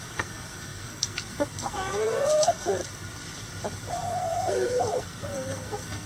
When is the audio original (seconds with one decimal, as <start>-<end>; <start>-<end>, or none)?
2.8-3.9